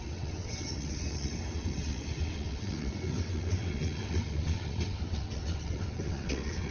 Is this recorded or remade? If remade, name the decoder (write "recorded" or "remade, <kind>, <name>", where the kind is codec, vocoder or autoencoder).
remade, vocoder, WaveNeXt